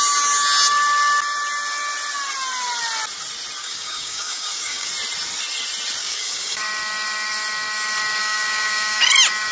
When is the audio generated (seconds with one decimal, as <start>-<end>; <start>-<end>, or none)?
3.6-4.9; 6.0-6.6; 8.2-9.0